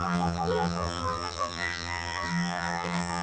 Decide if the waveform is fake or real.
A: fake